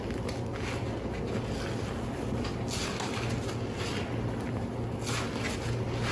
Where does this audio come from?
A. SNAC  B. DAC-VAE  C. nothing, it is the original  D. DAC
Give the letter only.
C